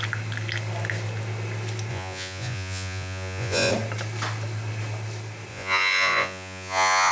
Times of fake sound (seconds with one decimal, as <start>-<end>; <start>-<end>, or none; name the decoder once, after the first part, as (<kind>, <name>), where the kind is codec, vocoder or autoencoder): 1.9-3.7 (vocoder, Vocos); 5.5-7.1